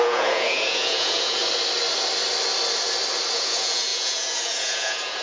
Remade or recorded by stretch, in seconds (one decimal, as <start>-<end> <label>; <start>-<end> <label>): 0.0-1.4 remade; 1.4-3.3 recorded; 3.3-5.2 remade